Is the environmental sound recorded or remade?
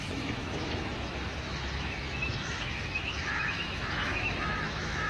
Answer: remade